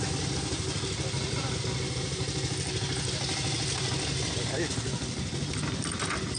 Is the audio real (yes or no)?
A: yes